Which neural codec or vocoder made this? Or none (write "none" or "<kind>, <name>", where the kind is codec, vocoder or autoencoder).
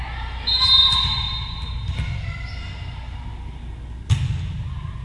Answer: none